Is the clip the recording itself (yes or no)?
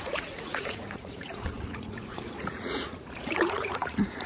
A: no